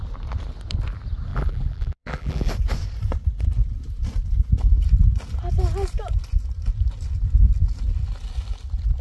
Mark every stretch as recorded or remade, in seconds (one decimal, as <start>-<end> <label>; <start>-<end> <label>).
0.0-1.3 recorded; 1.3-2.5 remade; 2.5-9.0 recorded